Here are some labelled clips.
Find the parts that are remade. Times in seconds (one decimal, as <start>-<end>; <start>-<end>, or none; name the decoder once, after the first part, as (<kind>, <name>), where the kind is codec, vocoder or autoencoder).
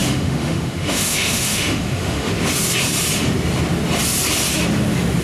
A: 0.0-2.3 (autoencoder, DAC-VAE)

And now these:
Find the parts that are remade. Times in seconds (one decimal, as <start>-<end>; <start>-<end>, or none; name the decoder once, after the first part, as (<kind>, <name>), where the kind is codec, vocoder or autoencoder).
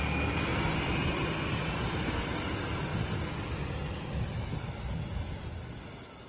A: 0.5-1.7 (vocoder, BigVGAN v2)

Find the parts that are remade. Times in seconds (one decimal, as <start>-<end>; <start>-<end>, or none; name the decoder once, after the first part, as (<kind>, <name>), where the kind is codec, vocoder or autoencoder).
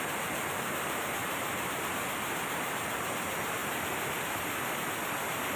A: 1.2-1.8 (vocoder, BigVGAN v2); 3.6-4.2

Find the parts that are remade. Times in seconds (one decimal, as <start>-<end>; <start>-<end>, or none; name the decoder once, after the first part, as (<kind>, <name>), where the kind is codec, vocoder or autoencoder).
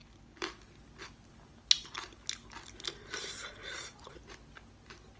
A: 3.5-4.2 (vocoder, Vocos)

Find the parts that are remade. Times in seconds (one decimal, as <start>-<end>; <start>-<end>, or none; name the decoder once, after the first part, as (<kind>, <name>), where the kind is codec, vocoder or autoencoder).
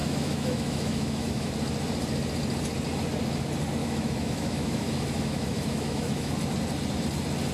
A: 0.0-1.5 (autoencoder, DAC-VAE); 3.8-6.3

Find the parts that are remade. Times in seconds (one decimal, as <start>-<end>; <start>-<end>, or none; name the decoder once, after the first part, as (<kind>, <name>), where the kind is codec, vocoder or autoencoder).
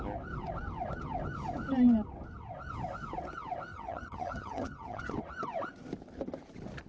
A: 3.7-5.1 (vocoder, HiFi-GAN)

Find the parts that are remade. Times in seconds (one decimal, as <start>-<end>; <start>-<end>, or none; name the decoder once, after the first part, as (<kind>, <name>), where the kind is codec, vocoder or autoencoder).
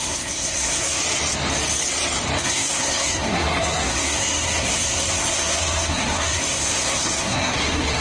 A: 0.0-1.0 (codec, SNAC); 2.4-8.0